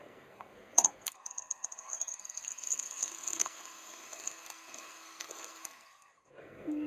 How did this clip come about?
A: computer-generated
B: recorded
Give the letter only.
A